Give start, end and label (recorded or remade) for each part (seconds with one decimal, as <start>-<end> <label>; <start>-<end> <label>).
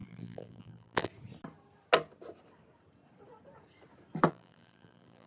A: 0.0-1.1 remade; 1.1-4.3 recorded; 4.3-5.3 remade